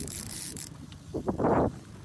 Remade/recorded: remade